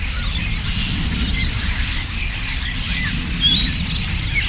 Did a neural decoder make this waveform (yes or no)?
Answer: no